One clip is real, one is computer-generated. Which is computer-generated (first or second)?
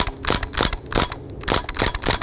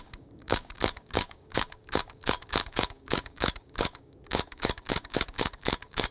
second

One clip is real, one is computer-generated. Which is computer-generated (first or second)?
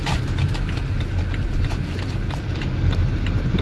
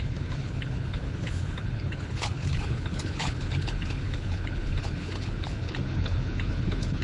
second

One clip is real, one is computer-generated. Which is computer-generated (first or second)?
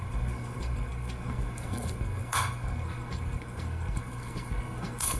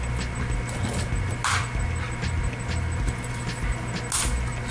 first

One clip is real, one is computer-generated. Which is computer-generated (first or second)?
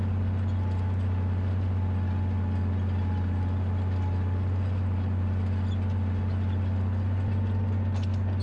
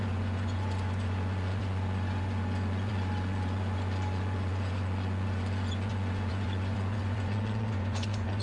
second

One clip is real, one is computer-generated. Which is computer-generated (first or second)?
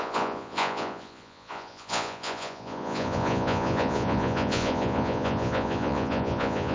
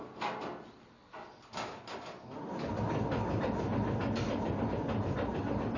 first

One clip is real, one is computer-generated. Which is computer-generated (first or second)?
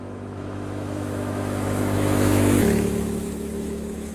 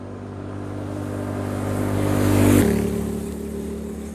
first